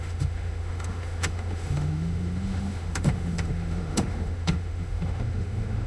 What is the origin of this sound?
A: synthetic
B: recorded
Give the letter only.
A